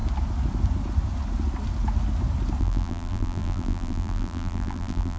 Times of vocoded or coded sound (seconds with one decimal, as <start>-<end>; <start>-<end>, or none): 2.6-5.2

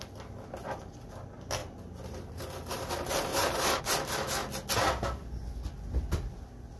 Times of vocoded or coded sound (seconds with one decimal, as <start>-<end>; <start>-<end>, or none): 1.6-2.9; 3.3-3.8

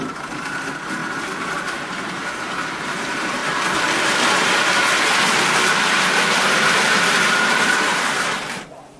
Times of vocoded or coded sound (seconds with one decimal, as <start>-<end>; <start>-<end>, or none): 0.0-3.4; 6.5-9.0

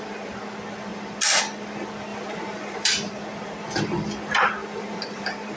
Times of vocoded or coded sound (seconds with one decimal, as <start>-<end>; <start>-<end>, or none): 2.1-2.9; 4.6-5.6

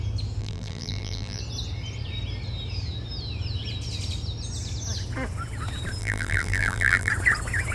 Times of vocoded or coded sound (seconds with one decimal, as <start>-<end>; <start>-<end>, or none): 0.4-1.4; 6.0-7.1

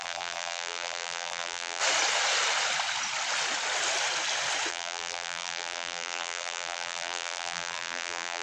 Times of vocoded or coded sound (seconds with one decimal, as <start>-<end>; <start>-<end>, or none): 0.0-1.8; 4.7-8.4